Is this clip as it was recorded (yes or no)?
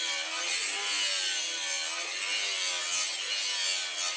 yes